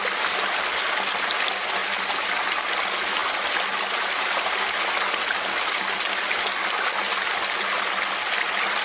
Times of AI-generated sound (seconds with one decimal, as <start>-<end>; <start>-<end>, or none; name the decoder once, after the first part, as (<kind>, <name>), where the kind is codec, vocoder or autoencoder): none